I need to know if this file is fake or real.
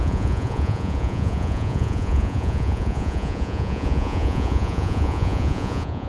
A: fake